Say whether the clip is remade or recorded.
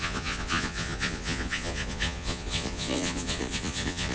remade